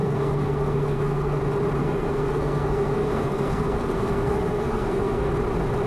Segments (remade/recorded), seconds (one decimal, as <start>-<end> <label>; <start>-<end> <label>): 0.0-1.4 remade; 1.4-1.8 recorded; 1.8-5.3 remade; 5.3-5.9 recorded